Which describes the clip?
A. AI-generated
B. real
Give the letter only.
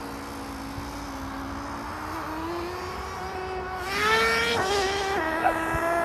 B